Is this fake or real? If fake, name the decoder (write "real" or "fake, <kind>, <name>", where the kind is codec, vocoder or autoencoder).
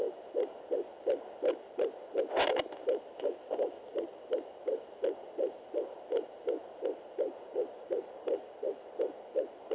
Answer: real